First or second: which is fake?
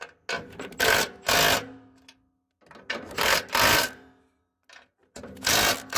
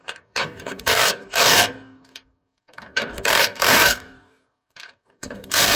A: second